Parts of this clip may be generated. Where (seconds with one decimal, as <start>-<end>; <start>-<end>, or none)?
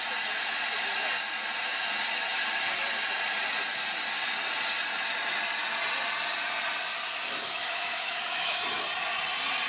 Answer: 7.4-8.6